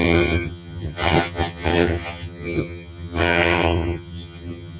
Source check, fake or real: fake